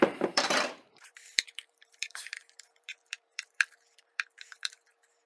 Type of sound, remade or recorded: remade